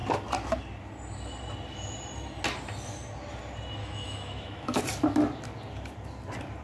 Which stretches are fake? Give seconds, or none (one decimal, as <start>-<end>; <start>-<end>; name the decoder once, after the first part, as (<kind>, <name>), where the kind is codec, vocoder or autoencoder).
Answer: 3.8-4.8 (autoencoder, DAC-VAE)